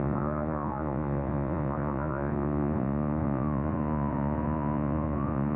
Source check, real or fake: fake